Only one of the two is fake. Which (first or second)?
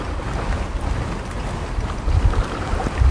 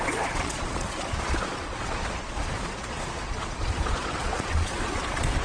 second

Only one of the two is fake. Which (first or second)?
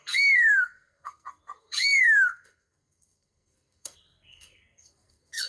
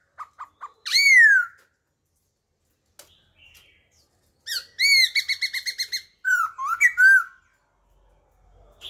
first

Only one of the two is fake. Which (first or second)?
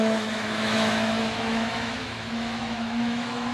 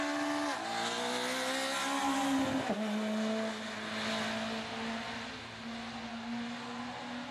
first